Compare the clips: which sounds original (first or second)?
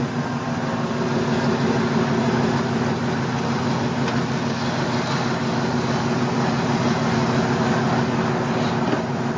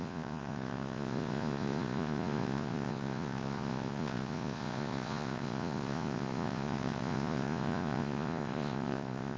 first